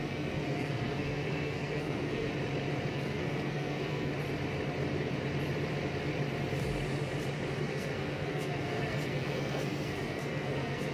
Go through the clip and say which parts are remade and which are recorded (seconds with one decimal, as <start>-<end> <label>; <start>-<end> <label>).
0.0-2.3 remade; 2.3-2.9 recorded; 2.9-4.1 remade; 4.1-7.6 recorded; 7.6-10.9 remade